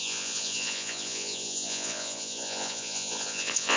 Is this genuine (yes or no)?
no